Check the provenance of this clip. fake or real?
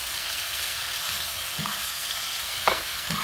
fake